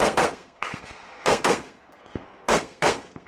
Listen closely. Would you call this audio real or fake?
fake